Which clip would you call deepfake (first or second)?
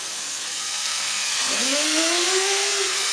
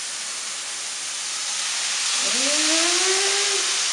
first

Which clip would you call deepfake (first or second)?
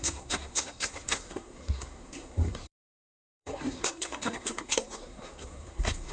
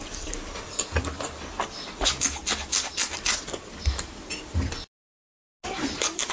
first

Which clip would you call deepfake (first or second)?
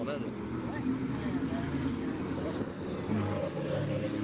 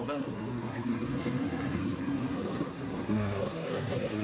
second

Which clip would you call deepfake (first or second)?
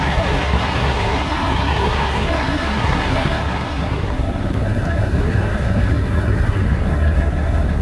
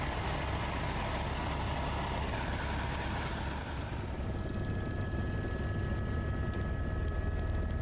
first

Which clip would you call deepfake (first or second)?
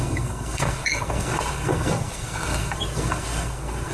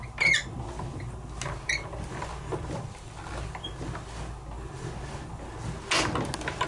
first